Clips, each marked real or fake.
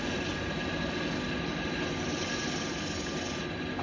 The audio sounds real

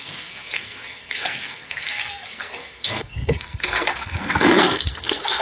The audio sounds fake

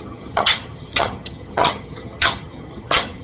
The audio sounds fake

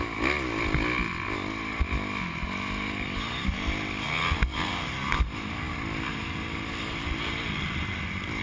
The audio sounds real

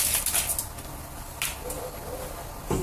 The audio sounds real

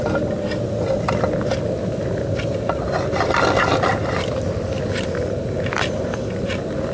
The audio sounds real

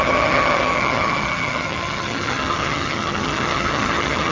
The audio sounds fake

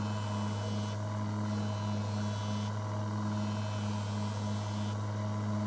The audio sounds real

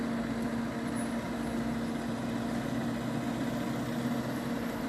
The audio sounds real